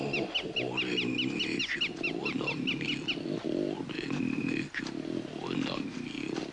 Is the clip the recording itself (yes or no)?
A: yes